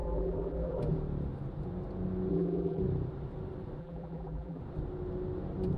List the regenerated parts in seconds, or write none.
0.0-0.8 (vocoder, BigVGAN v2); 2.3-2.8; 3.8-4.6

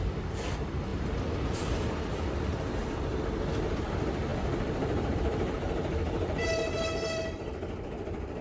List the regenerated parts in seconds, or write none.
0.0-8.4 (vocoder, BigVGAN v2)